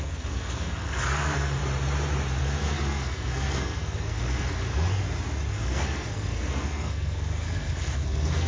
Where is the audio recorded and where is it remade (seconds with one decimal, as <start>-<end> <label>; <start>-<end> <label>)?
0.0-1.6 remade; 1.6-2.4 recorded; 2.4-4.9 remade; 4.9-5.5 recorded; 5.5-8.5 remade